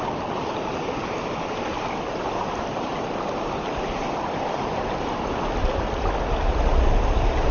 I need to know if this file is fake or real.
real